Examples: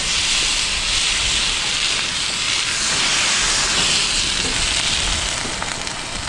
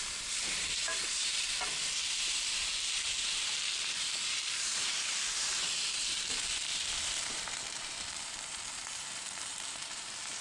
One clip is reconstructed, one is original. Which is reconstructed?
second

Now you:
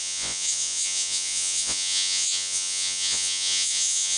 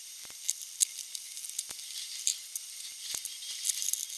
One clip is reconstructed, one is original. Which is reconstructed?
first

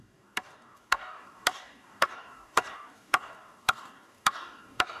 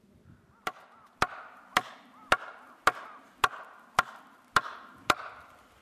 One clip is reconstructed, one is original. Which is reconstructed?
first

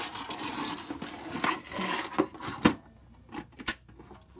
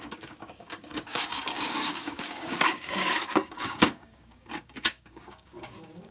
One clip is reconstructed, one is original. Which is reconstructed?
second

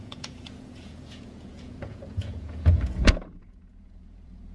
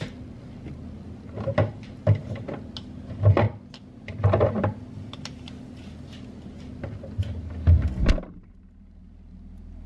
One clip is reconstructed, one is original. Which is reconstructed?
first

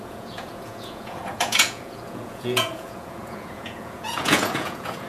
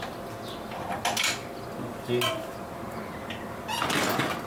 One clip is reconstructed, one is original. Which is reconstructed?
first